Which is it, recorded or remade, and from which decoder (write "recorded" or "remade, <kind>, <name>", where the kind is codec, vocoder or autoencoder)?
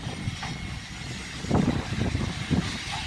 recorded